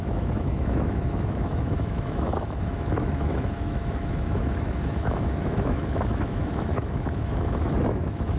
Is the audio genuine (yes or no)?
no